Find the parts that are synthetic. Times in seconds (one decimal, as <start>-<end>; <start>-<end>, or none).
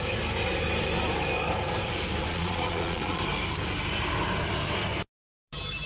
2.3-3.2